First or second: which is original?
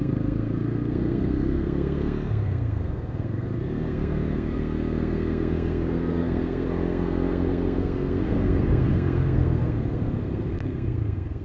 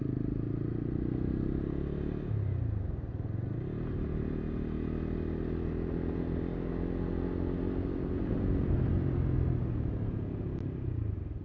second